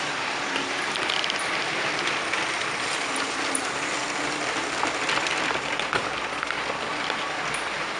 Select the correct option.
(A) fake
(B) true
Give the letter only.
B